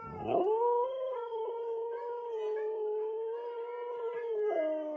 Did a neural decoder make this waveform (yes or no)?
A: no